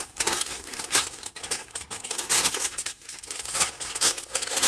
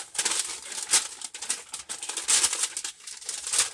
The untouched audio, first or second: second